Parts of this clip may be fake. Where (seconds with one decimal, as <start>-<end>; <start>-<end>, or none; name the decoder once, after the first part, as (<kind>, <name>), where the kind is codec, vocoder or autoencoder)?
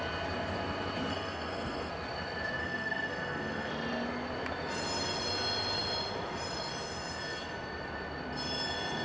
1.1-1.9 (codec, SNAC); 2.6-3.7